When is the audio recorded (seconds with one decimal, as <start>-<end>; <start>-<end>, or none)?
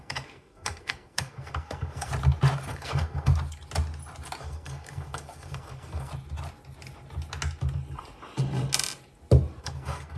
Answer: 2.1-2.7; 3.3-4.4; 6.1-9.6